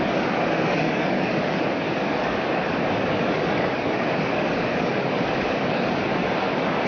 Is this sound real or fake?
fake